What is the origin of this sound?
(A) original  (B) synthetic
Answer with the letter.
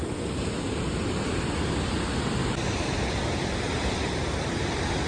A